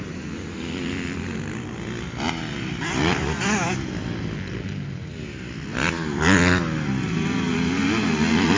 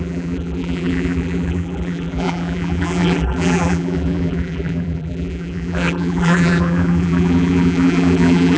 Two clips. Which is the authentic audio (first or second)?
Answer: first